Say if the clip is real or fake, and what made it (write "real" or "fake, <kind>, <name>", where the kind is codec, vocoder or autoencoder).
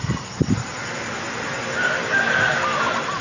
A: real